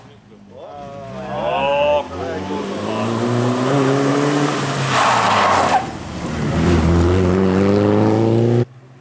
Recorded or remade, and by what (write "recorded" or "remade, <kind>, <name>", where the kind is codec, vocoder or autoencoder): recorded